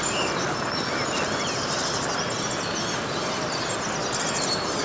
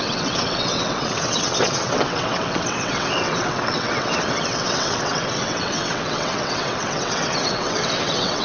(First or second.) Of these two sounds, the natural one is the first